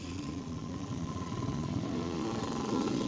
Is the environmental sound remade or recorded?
remade